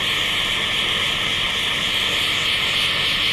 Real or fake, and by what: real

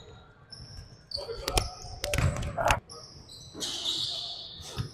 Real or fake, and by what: real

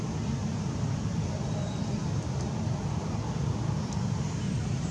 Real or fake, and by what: real